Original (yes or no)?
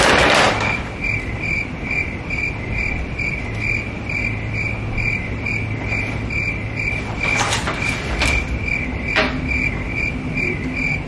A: yes